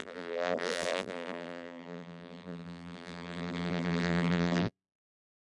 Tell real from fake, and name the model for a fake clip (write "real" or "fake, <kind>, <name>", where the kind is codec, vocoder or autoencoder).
fake, vocoder, BigVGAN v2